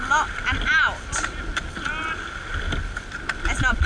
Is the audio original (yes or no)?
yes